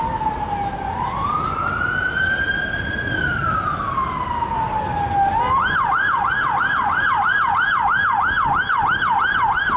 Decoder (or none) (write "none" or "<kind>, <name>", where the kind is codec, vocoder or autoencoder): none